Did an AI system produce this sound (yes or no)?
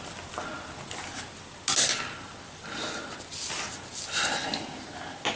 no